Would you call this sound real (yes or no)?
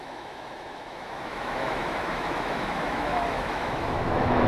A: no